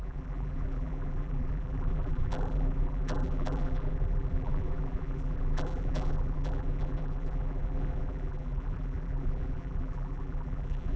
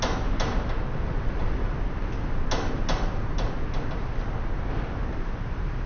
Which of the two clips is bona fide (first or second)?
second